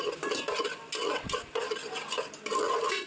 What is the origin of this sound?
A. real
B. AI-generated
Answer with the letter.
A